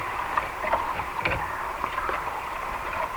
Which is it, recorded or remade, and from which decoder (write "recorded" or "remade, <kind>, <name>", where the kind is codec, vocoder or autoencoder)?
remade, vocoder, BigVGAN v2